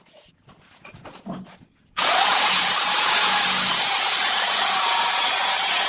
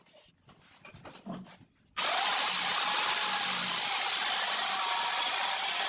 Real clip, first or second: second